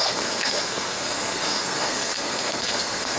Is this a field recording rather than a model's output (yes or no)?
no